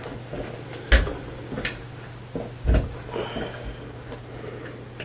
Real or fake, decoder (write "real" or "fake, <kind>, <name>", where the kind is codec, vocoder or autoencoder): real